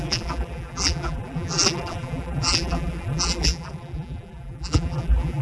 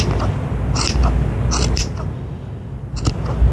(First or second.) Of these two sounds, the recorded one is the second